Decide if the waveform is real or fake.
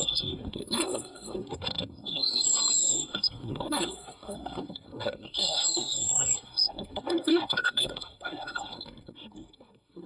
fake